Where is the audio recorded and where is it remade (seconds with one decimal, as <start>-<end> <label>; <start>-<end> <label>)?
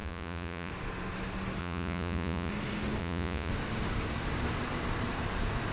0.0-0.7 remade; 0.7-1.6 recorded; 1.6-2.5 remade; 2.5-3.0 recorded; 3.0-3.5 remade; 3.5-5.7 recorded